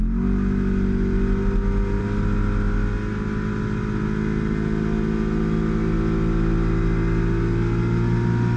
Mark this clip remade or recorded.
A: recorded